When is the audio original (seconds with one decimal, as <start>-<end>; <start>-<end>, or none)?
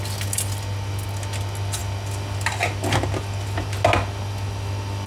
0.0-5.1